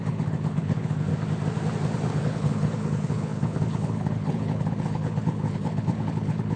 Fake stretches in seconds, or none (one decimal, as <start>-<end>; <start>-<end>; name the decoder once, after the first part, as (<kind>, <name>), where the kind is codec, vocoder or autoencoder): 0.0-1.1 (codec, HILCodec); 2.1-6.6